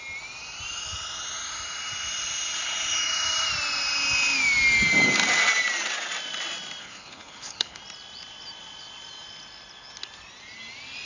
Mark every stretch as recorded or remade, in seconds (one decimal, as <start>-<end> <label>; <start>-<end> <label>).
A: 0.0-6.8 recorded; 6.8-7.8 remade; 7.8-11.1 recorded